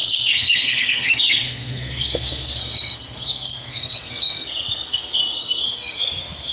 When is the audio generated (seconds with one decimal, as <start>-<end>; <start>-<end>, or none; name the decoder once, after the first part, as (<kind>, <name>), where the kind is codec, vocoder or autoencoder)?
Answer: 0.0-6.5 (codec, SNAC)